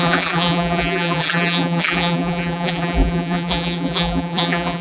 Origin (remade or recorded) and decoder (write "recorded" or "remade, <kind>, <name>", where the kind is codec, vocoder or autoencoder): remade, vocoder, BigVGAN v2